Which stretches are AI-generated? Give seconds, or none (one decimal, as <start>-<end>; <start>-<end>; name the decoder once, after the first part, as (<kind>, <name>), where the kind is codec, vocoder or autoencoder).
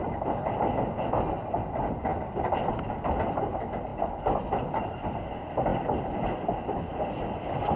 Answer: none